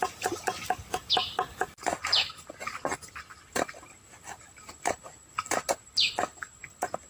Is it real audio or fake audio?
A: real